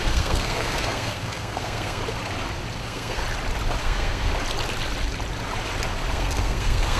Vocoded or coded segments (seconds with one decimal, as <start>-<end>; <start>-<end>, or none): 0.0-2.0; 2.8-3.2; 3.8-4.3; 6.1-7.0